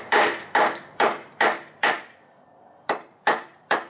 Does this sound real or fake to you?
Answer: fake